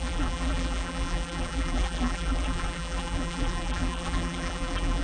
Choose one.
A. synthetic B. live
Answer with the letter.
A